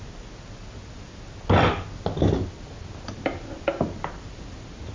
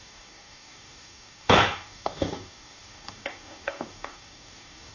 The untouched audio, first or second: first